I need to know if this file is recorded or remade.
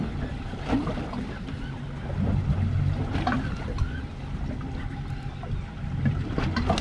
recorded